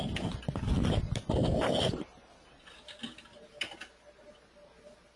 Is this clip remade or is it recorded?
recorded